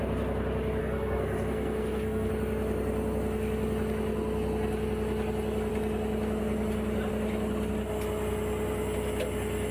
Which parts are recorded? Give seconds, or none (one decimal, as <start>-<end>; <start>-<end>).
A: 0.0-0.8; 2.3-9.7